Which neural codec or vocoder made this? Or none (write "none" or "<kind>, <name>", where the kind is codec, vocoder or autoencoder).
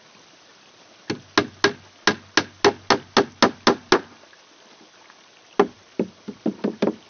none